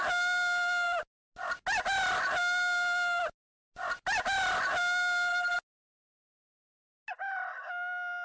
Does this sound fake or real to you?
real